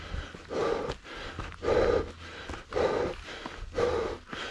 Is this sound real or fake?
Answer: real